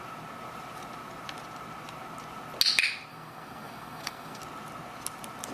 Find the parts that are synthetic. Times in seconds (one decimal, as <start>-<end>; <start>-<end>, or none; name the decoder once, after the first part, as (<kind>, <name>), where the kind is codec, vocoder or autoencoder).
3.1-4.4 (codec, SNAC)